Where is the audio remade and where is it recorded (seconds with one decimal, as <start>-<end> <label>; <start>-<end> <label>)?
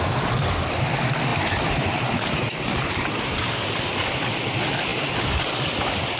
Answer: 0.0-4.9 remade; 4.9-5.5 recorded; 5.5-6.2 remade